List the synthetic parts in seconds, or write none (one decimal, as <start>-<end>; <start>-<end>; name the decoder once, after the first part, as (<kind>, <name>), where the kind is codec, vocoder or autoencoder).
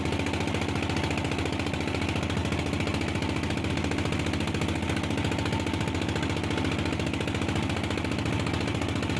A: none